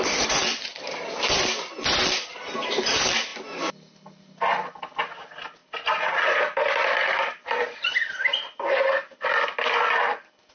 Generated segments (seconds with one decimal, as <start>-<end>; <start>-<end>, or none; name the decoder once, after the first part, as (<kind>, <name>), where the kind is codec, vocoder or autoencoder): none